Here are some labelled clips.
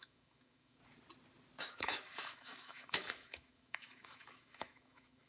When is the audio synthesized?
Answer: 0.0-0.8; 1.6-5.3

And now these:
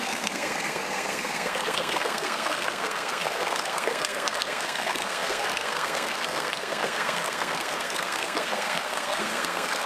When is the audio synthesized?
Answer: 0.0-9.9